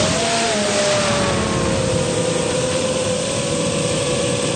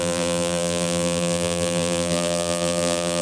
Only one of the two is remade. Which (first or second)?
second